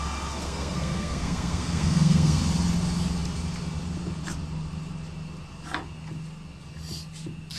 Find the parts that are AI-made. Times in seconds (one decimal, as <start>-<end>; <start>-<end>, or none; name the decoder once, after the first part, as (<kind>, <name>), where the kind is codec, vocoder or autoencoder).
0.4-2.4 (codec, SNAC)